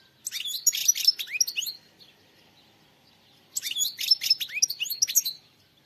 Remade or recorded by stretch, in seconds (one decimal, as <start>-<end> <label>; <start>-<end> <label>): 0.0-5.9 recorded

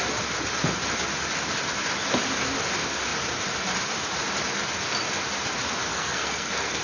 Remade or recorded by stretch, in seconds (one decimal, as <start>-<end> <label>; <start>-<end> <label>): 0.0-5.9 recorded; 5.9-6.8 remade

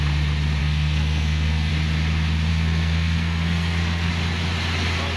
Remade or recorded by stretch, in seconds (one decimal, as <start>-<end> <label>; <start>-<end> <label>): 0.0-0.6 recorded; 0.6-1.7 remade; 1.7-2.5 recorded; 2.5-4.1 remade; 4.1-5.2 recorded

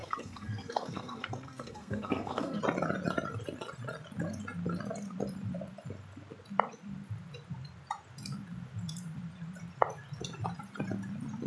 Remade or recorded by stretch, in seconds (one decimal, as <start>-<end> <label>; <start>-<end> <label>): 0.0-2.6 remade; 2.6-11.5 recorded

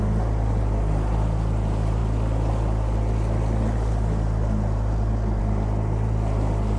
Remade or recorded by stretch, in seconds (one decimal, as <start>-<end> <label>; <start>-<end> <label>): 0.0-6.8 recorded

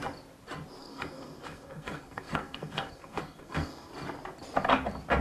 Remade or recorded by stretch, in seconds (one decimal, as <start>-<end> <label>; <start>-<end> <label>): 0.0-0.8 recorded; 0.8-3.9 remade; 3.9-5.2 recorded

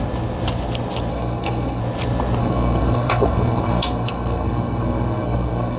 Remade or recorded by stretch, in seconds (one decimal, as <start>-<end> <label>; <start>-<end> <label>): 0.0-1.1 recorded; 1.1-1.8 remade; 1.8-2.4 recorded; 2.4-5.8 remade